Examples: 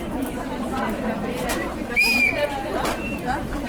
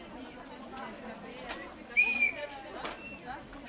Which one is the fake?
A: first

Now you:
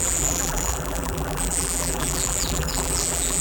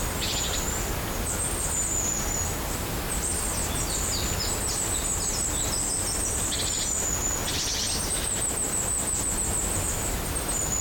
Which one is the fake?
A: first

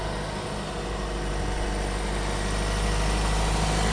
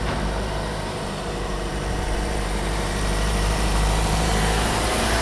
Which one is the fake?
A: second